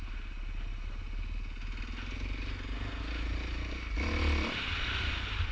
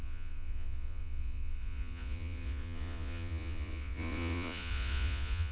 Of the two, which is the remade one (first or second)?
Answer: second